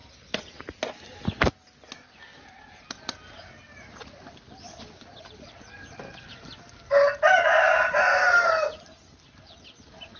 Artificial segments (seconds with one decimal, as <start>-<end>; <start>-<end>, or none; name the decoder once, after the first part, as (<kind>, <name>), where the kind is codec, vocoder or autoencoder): none